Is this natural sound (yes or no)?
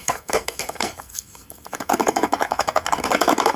no